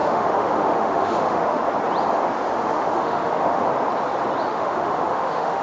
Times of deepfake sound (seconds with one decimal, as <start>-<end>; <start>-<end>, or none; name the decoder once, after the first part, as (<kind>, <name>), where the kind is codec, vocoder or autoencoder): 0.0-1.6 (autoencoder, DAC-VAE); 2.6-3.7; 4.5-5.6